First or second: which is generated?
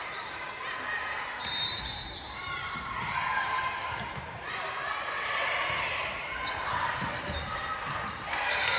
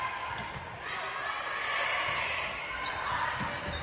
first